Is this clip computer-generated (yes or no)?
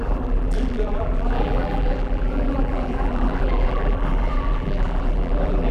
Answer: yes